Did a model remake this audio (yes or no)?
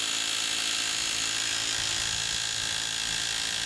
no